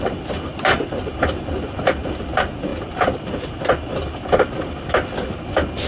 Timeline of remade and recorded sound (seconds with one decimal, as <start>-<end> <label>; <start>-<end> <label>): 0.0-5.9 recorded